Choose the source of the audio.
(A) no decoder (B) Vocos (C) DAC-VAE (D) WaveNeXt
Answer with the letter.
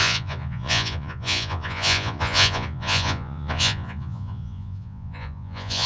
B